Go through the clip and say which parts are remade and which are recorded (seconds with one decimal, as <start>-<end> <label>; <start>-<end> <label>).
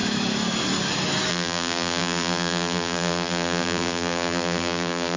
0.0-1.3 recorded; 1.3-5.2 remade